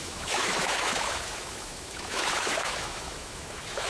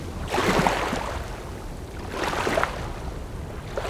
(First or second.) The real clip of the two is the second